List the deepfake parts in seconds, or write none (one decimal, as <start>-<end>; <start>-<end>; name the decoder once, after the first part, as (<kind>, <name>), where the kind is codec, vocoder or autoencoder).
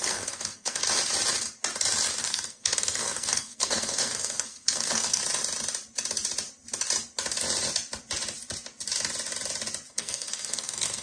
0.0-0.8 (codec, SNAC); 2.2-5.2; 9.9-11.0